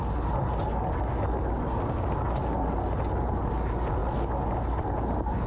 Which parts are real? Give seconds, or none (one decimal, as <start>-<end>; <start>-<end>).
0.0-5.5